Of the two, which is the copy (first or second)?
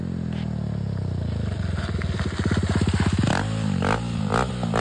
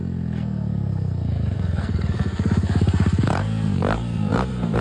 second